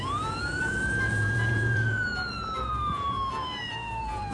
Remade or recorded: remade